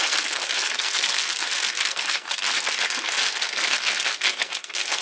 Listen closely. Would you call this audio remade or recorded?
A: remade